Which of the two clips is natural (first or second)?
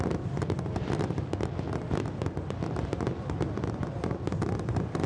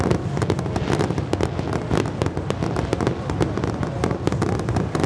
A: second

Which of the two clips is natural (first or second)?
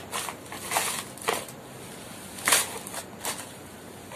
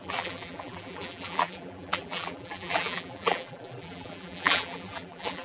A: first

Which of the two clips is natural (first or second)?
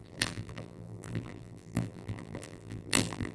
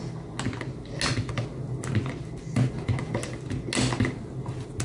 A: second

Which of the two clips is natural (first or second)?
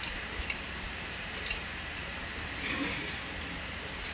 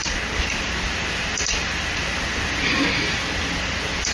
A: second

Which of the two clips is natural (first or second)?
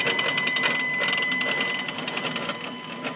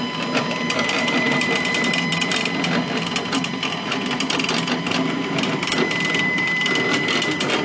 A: first